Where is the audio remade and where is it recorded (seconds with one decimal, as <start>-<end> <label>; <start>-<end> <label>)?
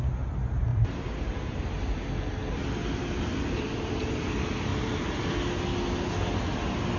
0.0-0.7 recorded; 0.7-1.8 remade; 1.8-2.8 recorded; 2.8-4.3 remade; 4.3-4.7 recorded; 4.7-5.2 remade; 5.2-7.0 recorded